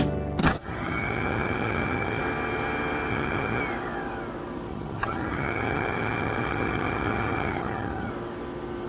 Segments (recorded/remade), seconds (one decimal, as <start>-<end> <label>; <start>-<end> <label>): 0.0-0.4 recorded; 0.4-2.2 remade; 2.2-3.1 recorded; 3.1-3.6 remade; 3.6-4.7 recorded; 4.7-8.1 remade; 8.1-8.9 recorded